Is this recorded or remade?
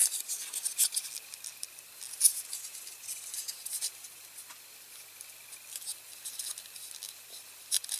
recorded